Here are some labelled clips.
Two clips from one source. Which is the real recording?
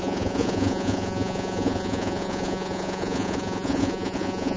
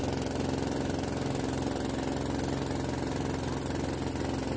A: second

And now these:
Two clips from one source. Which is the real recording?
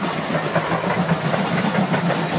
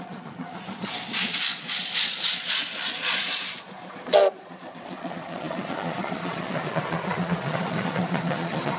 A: first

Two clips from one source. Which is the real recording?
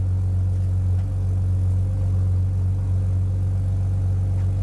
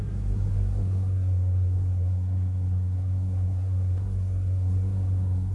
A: first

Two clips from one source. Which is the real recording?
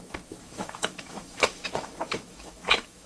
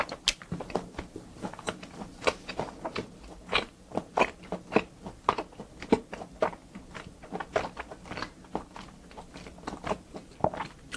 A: second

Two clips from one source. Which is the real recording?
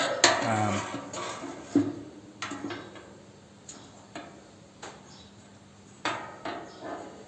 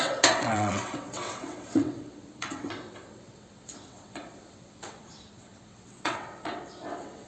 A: first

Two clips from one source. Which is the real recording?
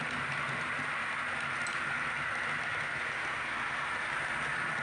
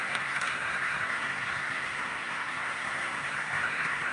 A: first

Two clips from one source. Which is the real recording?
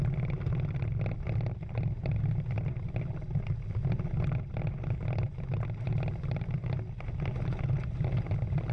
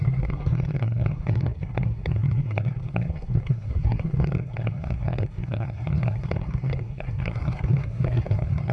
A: first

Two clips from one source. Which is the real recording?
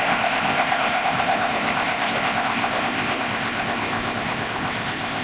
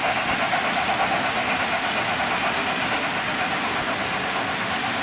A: second